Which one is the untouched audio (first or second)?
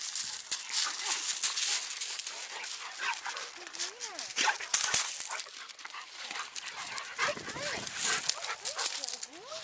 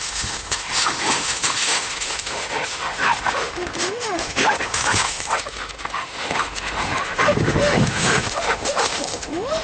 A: first